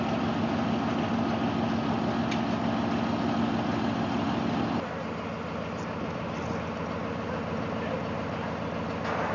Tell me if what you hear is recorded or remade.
recorded